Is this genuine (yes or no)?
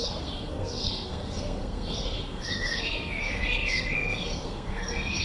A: no